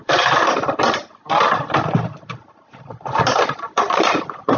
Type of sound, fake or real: fake